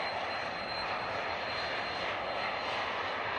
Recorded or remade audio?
remade